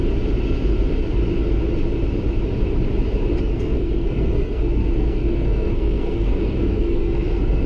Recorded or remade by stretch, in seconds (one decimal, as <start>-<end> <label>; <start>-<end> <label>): 0.0-3.4 recorded; 3.4-7.7 remade